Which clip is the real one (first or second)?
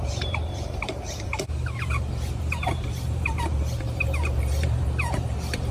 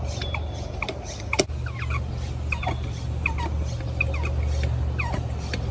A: second